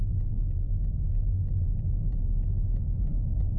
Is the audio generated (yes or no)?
no